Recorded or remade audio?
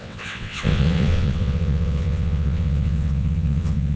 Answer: remade